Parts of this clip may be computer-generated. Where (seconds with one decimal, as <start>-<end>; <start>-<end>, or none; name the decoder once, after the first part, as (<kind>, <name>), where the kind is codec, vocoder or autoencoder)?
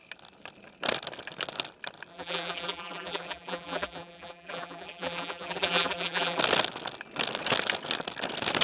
2.1-6.4 (vocoder, BigVGAN v2)